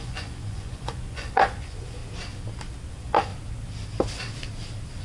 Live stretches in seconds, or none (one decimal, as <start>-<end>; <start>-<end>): 2.0-2.9; 3.3-5.0